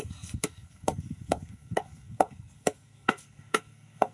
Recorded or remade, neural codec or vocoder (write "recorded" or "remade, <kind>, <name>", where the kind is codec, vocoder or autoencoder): remade, codec, SNAC